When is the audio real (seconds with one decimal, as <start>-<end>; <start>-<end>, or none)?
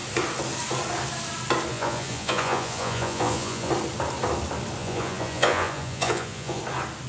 0.0-1.7; 3.7-4.8; 6.6-7.1